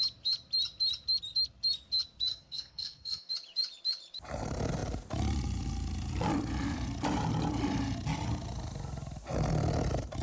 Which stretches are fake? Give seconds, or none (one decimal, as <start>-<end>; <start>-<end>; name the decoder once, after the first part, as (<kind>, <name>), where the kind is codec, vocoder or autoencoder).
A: 2.3-3.3 (codec, SNAC)

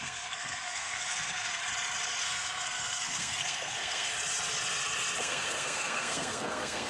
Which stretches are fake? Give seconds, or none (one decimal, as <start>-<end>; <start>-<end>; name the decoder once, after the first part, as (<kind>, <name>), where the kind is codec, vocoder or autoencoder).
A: 0.0-1.6 (codec, SNAC); 2.2-4.1; 5.2-6.9

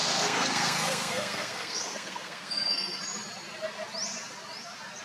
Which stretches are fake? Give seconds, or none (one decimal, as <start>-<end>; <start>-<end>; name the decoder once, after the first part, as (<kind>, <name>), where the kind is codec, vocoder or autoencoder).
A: 0.0-3.0 (codec, SNAC)

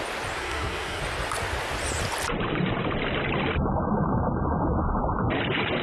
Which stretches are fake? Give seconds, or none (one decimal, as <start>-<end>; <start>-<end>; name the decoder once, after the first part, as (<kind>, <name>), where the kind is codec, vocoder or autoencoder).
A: 0.4-1.0 (codec, SNAC)

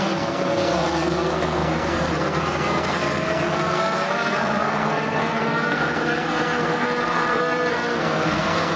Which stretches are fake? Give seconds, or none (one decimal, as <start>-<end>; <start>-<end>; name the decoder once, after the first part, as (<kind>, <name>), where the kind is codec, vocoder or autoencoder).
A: 0.0-8.8 (codec, SNAC)

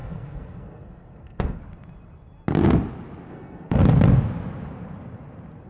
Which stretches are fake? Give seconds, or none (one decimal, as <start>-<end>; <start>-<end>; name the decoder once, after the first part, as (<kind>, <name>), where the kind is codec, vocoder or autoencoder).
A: 0.0-1.6 (codec, SNAC); 3.3-3.8

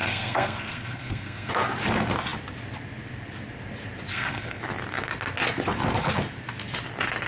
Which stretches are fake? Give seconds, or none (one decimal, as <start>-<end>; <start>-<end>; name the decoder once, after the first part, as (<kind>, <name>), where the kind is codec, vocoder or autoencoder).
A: 0.0-1.5 (codec, SNAC); 4.1-4.6